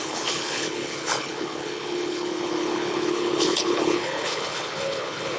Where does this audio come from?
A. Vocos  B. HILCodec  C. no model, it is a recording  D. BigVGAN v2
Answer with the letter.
B